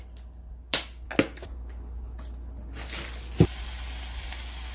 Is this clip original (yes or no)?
yes